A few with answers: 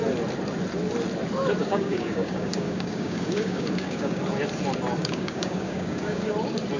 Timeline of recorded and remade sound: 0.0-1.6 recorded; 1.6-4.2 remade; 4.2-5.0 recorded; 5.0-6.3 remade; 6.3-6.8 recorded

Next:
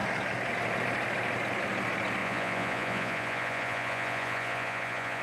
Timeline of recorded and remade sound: 0.0-2.2 recorded; 2.2-5.2 remade

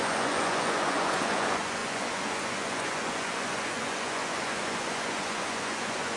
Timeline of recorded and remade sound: 0.0-6.2 remade

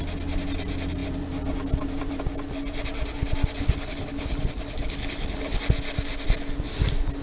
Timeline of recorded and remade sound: 0.0-3.6 recorded; 3.6-5.6 remade; 5.6-7.2 recorded

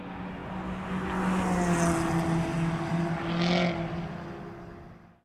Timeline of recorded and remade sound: 0.0-5.2 recorded